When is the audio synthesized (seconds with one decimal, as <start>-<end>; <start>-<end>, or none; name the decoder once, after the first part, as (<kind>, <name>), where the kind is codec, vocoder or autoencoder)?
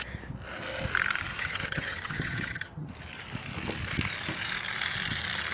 1.3-2.9 (vocoder, HiFi-GAN)